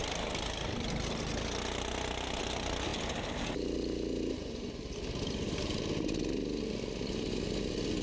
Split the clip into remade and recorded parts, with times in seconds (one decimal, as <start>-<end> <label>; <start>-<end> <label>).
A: 0.0-1.3 remade; 1.3-2.9 recorded; 2.9-3.4 remade; 3.4-8.0 recorded